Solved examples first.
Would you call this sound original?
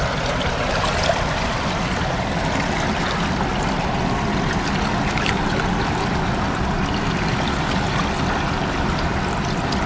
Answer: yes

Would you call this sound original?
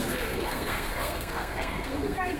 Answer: no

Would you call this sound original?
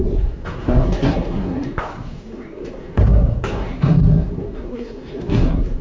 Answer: no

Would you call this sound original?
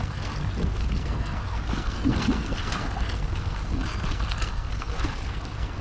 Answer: no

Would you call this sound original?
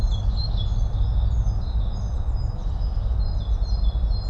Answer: yes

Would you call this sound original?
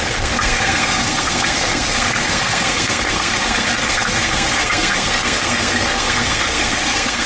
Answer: no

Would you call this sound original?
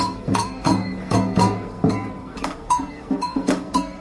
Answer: no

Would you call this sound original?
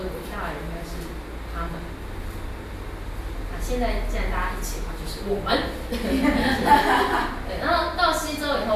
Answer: yes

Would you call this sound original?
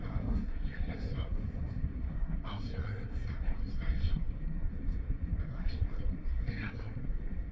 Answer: no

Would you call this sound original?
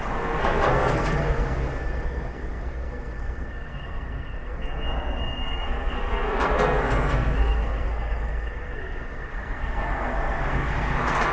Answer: no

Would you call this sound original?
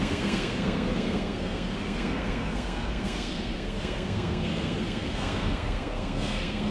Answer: no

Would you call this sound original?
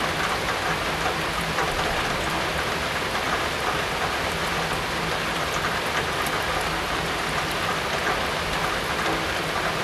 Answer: yes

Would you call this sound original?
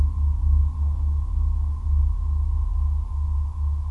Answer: yes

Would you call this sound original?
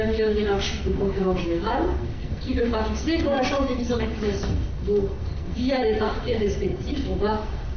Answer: no